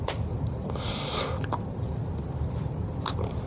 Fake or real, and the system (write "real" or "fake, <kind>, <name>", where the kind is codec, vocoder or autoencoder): real